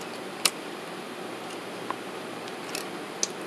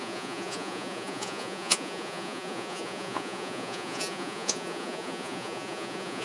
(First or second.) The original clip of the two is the first